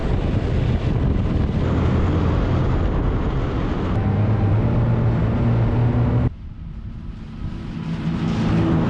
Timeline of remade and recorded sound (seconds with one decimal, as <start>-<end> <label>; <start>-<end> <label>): 0.0-8.9 recorded